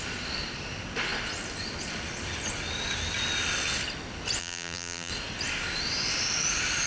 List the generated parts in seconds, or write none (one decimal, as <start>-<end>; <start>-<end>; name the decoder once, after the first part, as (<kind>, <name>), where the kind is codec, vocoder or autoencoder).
4.4-5.1 (vocoder, BigVGAN v2)